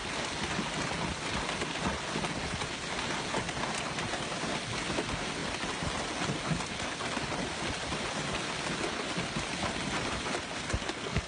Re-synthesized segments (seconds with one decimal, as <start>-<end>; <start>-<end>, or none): 10.8-11.3